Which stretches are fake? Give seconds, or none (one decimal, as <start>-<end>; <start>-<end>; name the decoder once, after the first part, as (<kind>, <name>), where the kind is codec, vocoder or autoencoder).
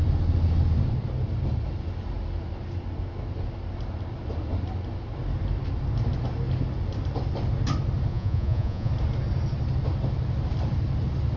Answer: 8.1-8.9 (vocoder, Vocos)